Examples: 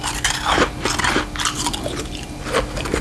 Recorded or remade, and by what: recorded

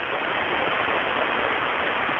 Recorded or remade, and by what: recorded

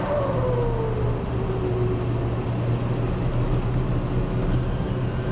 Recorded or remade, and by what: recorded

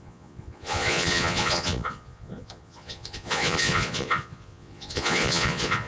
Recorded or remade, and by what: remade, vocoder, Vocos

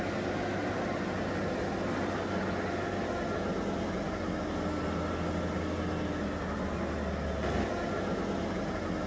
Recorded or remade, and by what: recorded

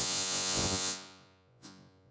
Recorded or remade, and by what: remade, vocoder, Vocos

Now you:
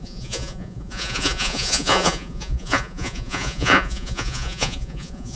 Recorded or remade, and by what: remade, vocoder, Vocos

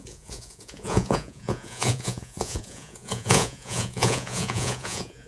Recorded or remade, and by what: remade, vocoder, Vocos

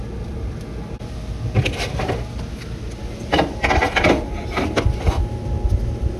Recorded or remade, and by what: recorded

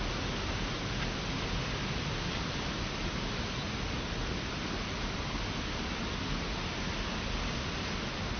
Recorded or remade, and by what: recorded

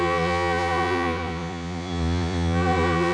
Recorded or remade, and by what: remade, vocoder, Vocos